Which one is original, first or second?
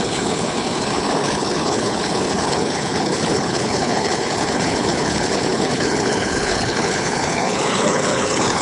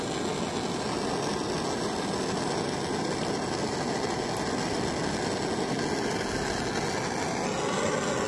second